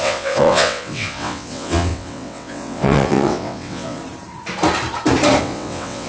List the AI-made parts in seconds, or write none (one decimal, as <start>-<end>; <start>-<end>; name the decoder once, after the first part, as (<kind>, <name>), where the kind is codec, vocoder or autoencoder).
0.0-4.0 (vocoder, WaveNeXt); 5.4-6.1